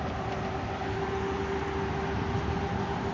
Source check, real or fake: real